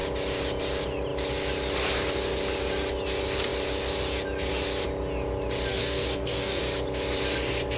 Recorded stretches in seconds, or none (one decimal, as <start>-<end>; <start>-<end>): 0.0-5.7; 6.6-7.8